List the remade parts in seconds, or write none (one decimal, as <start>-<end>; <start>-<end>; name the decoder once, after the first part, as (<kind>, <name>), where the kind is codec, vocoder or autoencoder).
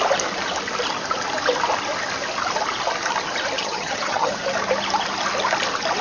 3.6-4.3 (vocoder, HiFi-GAN)